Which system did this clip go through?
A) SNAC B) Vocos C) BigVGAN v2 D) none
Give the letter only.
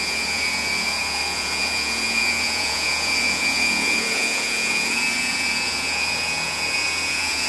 B